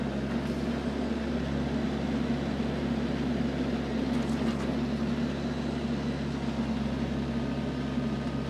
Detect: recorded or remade recorded